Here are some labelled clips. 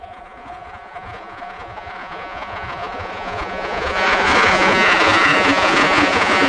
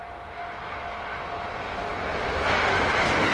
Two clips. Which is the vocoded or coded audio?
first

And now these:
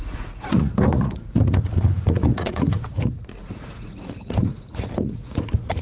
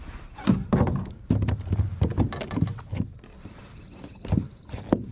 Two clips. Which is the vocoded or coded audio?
first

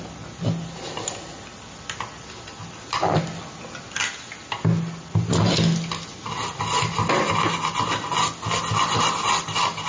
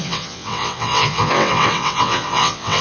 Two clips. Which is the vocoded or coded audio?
second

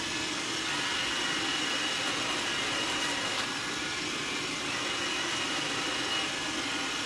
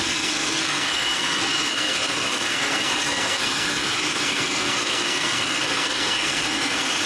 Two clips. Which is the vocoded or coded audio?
second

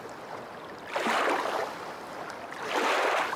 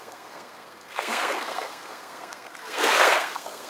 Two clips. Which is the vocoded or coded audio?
second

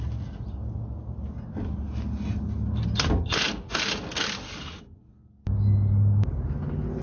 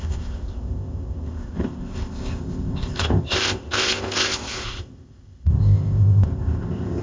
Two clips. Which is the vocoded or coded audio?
second